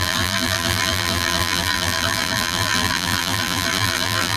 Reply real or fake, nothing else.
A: fake